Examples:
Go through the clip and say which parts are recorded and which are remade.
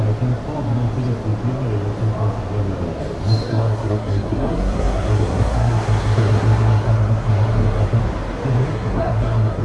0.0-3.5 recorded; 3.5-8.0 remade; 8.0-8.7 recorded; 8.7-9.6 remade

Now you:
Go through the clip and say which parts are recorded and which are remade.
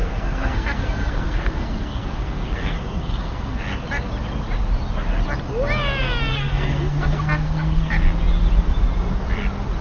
0.0-3.6 remade; 3.6-6.3 recorded; 6.3-8.0 remade; 8.0-9.8 recorded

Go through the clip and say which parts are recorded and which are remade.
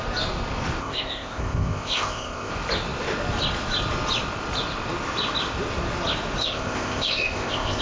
0.0-0.8 recorded; 0.8-2.5 remade; 2.5-6.4 recorded; 6.4-7.8 remade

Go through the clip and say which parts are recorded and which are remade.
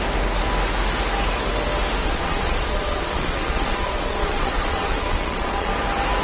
0.0-2.0 recorded; 2.0-5.7 remade; 5.7-6.2 recorded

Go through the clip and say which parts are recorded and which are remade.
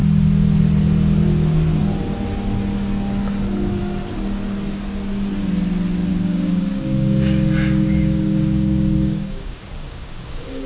0.0-6.1 recorded; 6.1-10.7 remade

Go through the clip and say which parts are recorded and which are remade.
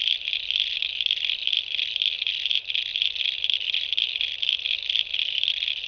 0.0-5.9 recorded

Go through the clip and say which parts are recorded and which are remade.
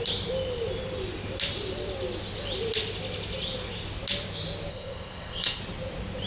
0.0-4.7 recorded; 4.7-5.6 remade; 5.6-6.3 recorded